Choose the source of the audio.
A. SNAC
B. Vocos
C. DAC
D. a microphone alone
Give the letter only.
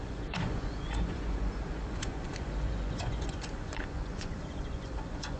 B